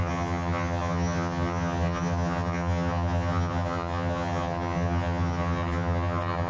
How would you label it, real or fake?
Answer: fake